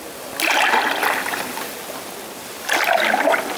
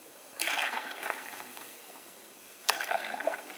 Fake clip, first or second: second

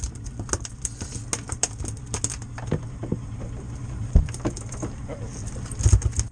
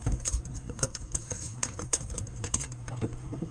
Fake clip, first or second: second